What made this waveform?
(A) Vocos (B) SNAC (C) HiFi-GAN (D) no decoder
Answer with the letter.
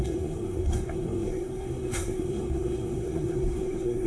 B